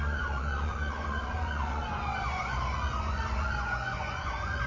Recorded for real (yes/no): no